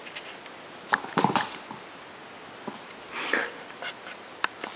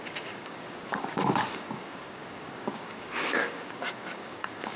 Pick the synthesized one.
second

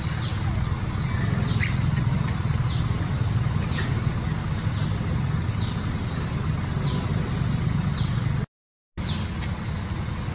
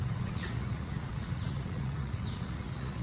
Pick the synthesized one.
second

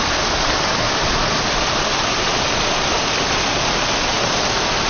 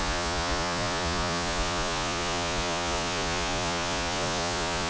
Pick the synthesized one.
second